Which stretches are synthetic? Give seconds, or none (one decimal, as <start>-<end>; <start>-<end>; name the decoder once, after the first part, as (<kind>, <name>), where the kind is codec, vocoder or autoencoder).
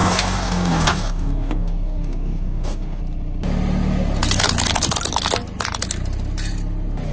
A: 0.0-3.0 (codec, DAC)